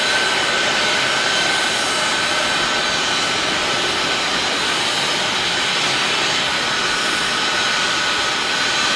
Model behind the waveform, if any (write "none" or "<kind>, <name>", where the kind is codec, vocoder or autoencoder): none